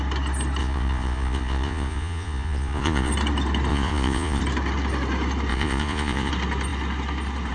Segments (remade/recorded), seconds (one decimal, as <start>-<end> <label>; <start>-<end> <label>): 0.0-0.6 recorded; 0.6-3.1 remade; 3.1-3.7 recorded; 3.7-4.4 remade; 4.4-5.5 recorded; 5.5-6.3 remade; 6.3-7.5 recorded